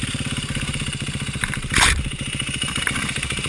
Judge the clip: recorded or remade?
remade